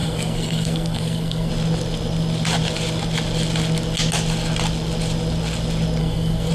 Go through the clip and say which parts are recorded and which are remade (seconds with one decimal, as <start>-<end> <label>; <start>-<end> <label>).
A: 0.0-1.5 remade; 1.5-6.0 recorded; 6.0-6.5 remade